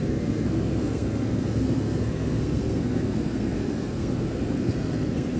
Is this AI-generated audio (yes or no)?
yes